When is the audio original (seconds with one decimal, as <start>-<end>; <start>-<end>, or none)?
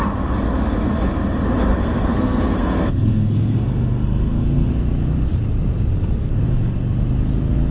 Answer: 0.0-1.7; 4.7-7.7